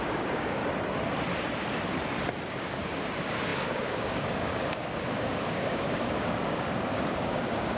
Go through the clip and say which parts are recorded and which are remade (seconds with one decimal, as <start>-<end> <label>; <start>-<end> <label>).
0.0-0.6 remade; 0.6-2.5 recorded; 2.5-7.8 remade